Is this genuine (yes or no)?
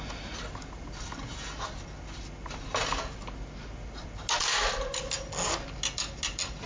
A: yes